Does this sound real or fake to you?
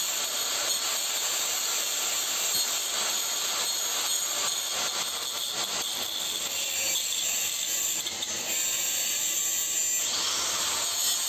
real